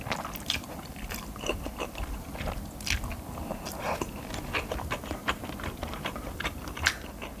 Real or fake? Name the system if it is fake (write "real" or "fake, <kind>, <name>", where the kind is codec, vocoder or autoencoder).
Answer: fake, vocoder, BigVGAN v2